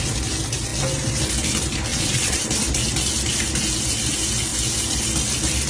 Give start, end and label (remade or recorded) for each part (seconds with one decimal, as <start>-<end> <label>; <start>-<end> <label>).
0.0-1.9 recorded; 1.9-2.4 remade; 2.4-5.7 recorded